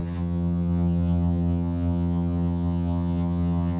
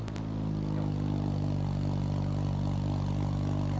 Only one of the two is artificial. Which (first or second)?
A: first